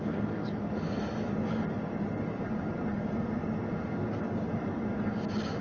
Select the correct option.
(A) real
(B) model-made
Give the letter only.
A